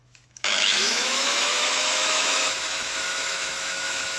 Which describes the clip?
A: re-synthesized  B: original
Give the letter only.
A